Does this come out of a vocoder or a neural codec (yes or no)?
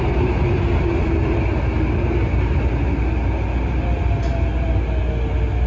no